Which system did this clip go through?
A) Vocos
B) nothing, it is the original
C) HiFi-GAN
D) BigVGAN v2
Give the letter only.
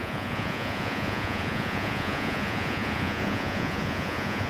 A